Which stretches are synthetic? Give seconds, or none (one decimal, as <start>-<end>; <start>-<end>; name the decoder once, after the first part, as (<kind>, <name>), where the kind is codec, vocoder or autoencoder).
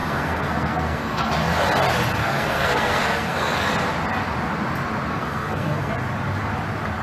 0.0-1.3 (codec, SNAC); 2.2-3.7; 5.1-5.9